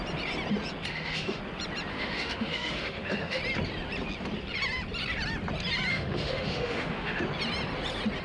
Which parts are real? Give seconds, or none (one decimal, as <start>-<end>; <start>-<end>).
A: 0.0-0.9; 1.4-1.9; 3.4-5.9; 7.2-8.2